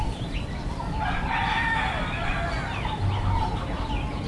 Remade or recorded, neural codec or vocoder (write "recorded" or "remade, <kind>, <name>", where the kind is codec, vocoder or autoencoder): recorded